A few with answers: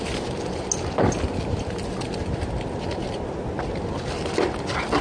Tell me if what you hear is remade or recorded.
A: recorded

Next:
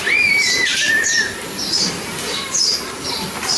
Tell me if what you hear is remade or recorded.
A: recorded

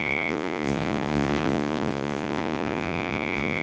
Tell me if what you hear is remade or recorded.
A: remade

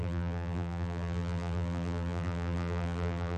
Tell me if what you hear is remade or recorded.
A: remade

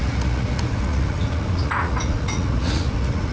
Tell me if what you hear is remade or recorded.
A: remade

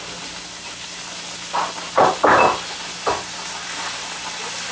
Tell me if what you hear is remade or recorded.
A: recorded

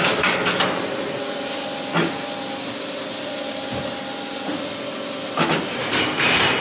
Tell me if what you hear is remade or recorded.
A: recorded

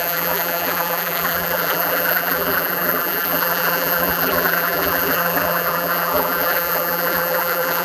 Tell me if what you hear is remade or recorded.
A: remade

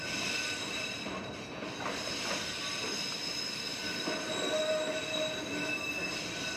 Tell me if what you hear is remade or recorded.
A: recorded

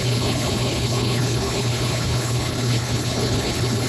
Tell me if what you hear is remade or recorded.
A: remade